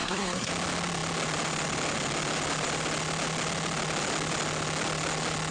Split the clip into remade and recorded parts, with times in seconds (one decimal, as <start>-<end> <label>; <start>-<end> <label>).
0.0-0.5 remade; 0.5-5.5 recorded